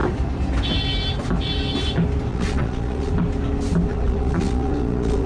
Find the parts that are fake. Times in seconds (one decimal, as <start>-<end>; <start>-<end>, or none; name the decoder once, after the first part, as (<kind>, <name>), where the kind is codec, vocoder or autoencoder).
2.3-3.1 (vocoder, Vocos); 3.9-5.3